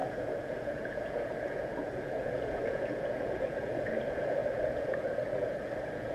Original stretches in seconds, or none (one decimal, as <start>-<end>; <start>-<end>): none